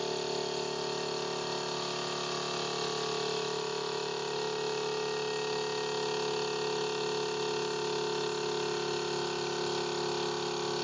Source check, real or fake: real